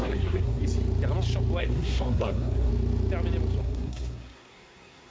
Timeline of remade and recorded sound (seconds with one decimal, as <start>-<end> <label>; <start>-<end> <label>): 0.0-0.6 remade; 0.6-1.6 recorded; 1.6-2.7 remade; 2.7-3.6 recorded; 3.6-5.1 remade